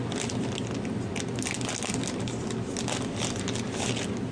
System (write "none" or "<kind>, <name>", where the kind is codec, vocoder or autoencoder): none